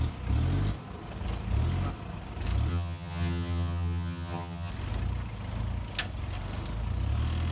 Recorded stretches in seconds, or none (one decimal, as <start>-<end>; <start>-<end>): 0.0-2.7; 4.7-7.5